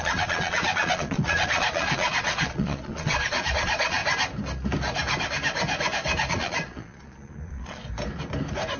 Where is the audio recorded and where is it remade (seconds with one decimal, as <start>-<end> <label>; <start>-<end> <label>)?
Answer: 0.0-4.0 remade; 4.0-6.3 recorded; 6.3-7.8 remade; 7.8-8.8 recorded